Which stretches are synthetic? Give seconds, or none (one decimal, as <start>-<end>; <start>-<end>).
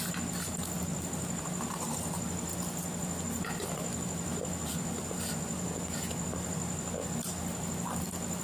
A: none